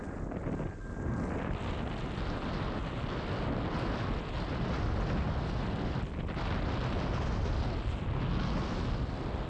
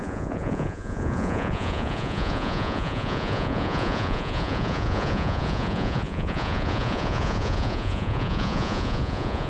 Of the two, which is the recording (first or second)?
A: first